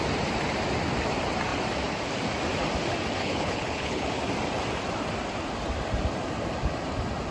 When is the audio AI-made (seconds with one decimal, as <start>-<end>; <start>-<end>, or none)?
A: 3.2-4.2